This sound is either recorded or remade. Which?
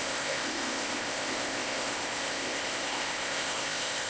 remade